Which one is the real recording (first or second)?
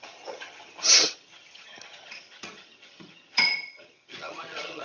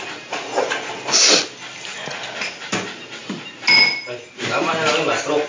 second